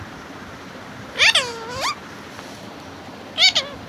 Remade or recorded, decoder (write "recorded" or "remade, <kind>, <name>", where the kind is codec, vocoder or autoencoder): recorded